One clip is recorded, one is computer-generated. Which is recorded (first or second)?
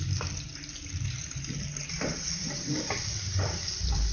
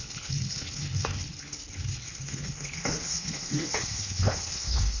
first